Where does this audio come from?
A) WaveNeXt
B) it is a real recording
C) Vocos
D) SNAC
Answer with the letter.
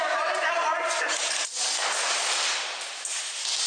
B